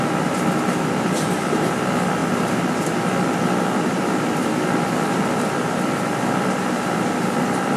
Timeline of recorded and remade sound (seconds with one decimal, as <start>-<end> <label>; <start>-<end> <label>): 0.0-7.8 recorded